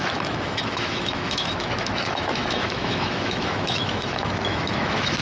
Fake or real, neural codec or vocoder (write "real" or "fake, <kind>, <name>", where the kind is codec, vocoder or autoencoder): fake, autoencoder, DAC-VAE